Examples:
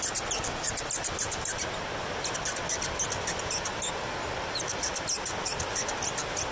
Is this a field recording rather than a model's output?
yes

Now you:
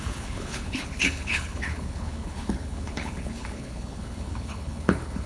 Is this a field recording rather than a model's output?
no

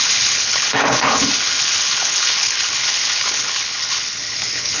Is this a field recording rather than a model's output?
no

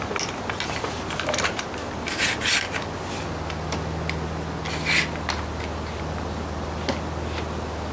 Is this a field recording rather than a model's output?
yes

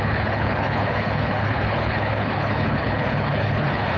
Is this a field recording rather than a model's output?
no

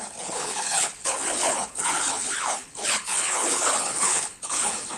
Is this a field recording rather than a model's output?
no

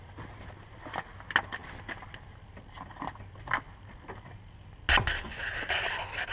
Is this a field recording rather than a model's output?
yes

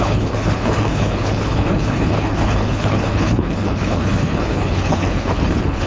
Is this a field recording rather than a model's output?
no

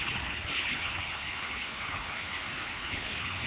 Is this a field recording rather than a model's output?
no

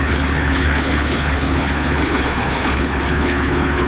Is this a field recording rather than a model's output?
no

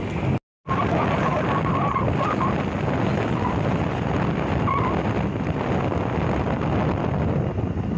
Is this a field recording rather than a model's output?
yes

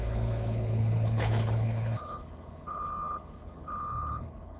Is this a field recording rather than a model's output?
no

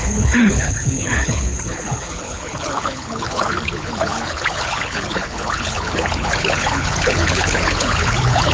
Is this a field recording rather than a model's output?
no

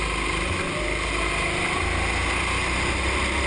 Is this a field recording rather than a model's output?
yes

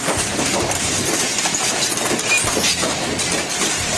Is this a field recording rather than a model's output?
yes